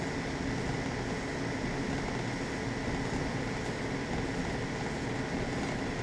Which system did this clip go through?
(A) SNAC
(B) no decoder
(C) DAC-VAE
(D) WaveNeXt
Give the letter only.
B